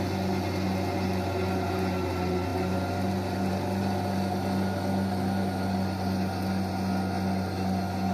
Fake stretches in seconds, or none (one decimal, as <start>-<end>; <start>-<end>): none